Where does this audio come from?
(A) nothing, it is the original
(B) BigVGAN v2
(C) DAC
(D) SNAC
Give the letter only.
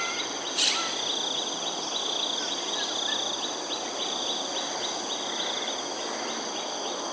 A